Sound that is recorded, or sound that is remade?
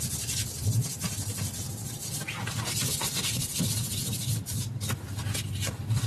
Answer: remade